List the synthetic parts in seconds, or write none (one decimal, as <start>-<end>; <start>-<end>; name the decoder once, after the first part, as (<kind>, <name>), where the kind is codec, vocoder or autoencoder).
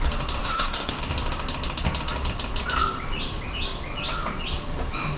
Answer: 0.4-1.0 (codec, SNAC)